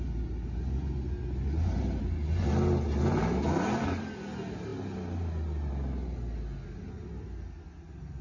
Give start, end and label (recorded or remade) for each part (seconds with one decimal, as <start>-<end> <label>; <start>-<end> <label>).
0.0-8.2 recorded